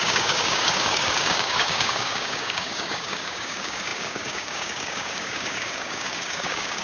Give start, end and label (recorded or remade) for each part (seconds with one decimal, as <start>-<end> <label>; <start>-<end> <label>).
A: 0.0-6.8 remade